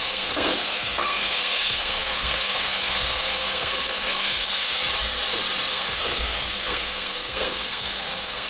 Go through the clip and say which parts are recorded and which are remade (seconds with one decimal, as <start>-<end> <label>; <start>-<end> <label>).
0.0-4.8 remade; 4.8-5.7 recorded; 5.7-8.5 remade